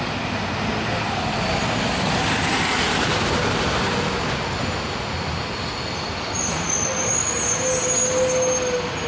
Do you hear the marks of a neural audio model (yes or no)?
no